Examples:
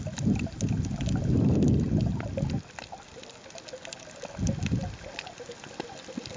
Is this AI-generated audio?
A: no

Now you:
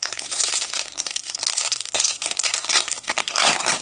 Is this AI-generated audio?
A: yes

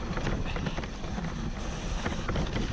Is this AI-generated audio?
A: no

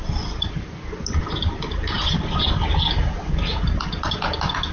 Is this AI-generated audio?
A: no